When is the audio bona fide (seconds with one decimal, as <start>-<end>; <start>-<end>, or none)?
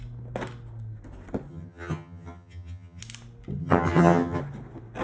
0.0-1.5; 3.0-3.6; 4.4-5.0